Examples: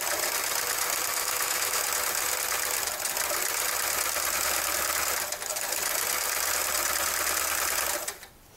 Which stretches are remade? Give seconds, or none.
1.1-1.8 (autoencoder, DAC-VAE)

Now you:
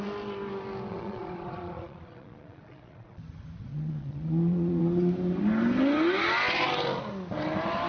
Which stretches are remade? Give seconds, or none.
0.9-3.2 (vocoder, Vocos); 3.7-4.8

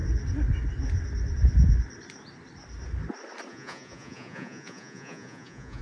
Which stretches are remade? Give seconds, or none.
3.5-5.8 (vocoder, Vocos)

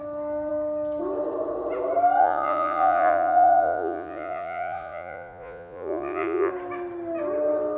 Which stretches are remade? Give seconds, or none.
2.2-6.5 (vocoder, Vocos)

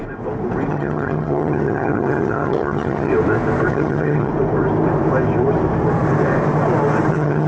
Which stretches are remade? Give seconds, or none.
0.7-3.1 (vocoder, HiFi-GAN); 3.7-4.3; 7.1-7.5

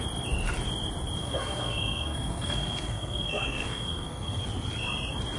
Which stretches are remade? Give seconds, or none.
1.2-4.4 (codec, SNAC)